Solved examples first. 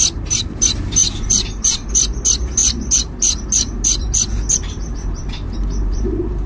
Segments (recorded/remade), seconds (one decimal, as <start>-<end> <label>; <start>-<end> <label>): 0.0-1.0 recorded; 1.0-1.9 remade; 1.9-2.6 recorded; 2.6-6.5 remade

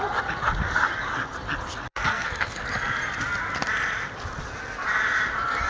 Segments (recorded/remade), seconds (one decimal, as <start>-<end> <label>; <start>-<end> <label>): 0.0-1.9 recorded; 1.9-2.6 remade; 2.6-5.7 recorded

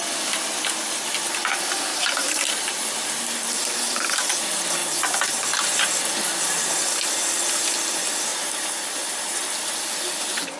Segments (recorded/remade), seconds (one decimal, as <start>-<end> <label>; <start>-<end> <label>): 0.0-1.9 recorded; 1.9-4.1 remade; 4.1-8.3 recorded; 8.3-9.1 remade; 9.1-10.6 recorded

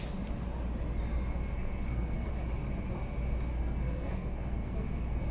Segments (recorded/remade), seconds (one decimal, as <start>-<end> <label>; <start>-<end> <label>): 0.0-1.5 recorded; 1.5-2.3 remade; 2.3-3.5 recorded; 3.5-5.3 remade

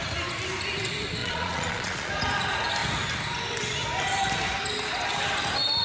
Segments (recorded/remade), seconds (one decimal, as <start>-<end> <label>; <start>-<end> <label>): 0.0-1.2 recorded; 1.2-2.1 remade; 2.1-5.8 recorded